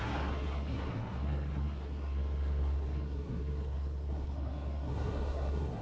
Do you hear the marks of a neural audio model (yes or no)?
yes